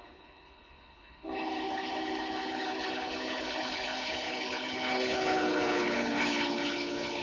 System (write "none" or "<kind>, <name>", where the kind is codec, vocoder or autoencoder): codec, HILCodec